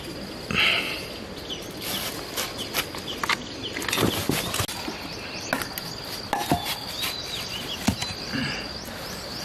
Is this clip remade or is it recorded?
recorded